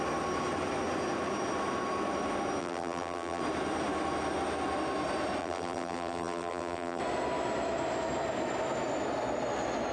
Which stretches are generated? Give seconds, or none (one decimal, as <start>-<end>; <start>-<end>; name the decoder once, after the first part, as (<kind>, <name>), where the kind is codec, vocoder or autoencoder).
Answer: 2.6-3.4 (vocoder, BigVGAN v2); 5.4-7.0